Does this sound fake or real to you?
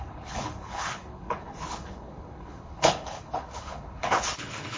fake